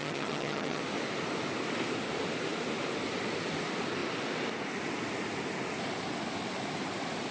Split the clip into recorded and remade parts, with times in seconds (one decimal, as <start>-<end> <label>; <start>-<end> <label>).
0.0-0.8 remade; 0.8-7.3 recorded